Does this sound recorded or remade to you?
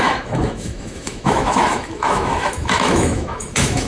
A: remade